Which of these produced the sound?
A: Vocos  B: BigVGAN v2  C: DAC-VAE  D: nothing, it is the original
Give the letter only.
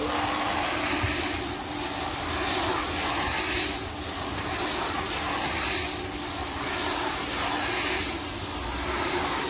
D